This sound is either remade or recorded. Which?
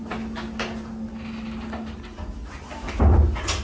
recorded